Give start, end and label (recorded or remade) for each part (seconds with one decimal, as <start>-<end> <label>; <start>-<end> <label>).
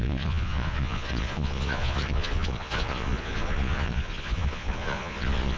0.0-5.6 remade